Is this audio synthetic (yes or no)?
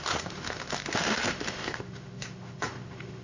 yes